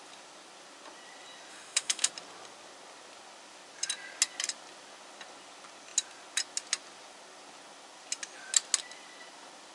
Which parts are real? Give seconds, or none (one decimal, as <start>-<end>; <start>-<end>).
0.0-1.5; 2.1-9.7